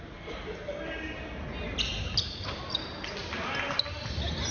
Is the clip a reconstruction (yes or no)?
no